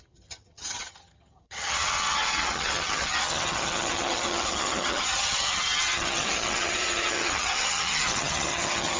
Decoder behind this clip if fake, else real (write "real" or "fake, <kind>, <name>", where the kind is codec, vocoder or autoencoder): fake, vocoder, HiFi-GAN